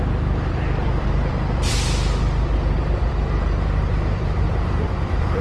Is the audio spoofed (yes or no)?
yes